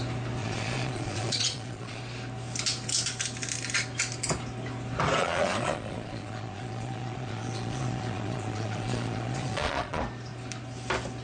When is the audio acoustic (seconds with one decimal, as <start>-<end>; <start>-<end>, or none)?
0.0-0.4; 2.0-5.2; 10.0-11.2